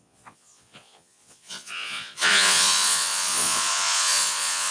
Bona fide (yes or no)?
no